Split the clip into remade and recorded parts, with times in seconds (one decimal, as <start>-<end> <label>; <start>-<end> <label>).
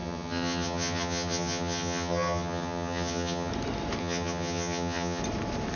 0.0-3.5 remade; 3.5-4.0 recorded; 4.0-5.2 remade; 5.2-5.8 recorded